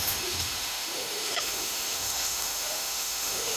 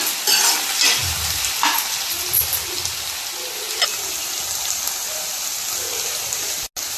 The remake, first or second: first